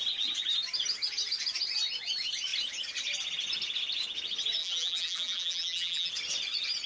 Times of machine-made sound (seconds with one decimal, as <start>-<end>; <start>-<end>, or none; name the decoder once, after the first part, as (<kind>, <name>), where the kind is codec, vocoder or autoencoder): 4.6-6.1 (vocoder, BigVGAN v2)